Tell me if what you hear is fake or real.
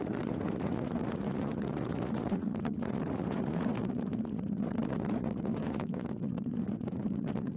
fake